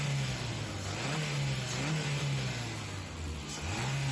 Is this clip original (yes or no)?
yes